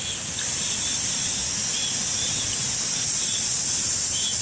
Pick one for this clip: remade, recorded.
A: recorded